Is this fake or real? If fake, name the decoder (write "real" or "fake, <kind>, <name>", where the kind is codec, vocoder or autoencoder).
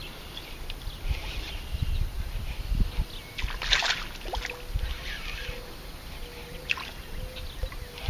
real